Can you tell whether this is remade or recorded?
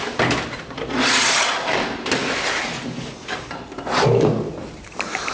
recorded